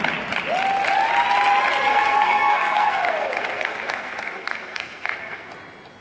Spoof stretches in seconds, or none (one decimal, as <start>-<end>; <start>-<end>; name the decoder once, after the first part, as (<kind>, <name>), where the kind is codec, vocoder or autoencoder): 1.9-5.5 (codec, SNAC)